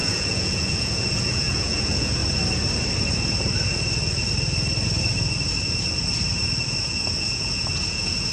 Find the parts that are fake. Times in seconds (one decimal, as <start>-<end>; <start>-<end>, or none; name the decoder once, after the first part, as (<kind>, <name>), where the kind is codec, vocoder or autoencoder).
0.0-2.2 (vocoder, Vocos); 6.8-8.3